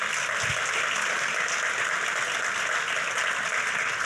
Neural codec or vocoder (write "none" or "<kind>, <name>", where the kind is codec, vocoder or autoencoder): none